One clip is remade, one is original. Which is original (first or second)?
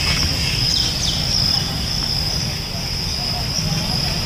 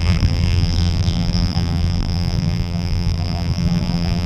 first